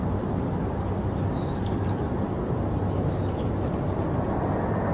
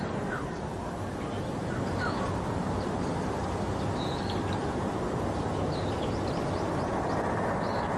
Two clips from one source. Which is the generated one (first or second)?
second